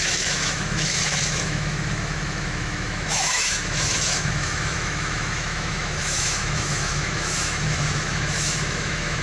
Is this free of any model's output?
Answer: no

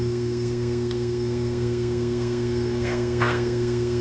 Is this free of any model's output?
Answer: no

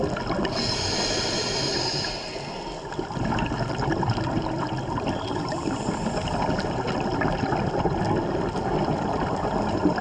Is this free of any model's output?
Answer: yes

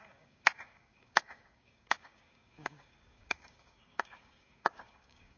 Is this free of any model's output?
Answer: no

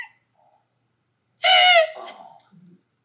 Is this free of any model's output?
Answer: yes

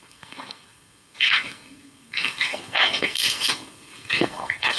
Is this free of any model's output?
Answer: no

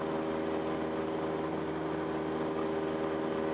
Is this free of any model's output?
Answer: yes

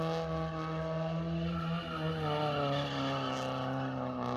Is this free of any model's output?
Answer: yes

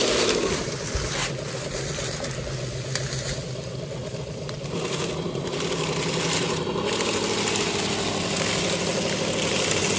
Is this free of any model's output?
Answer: yes